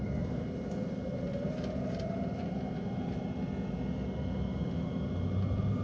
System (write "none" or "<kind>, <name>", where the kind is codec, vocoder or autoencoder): none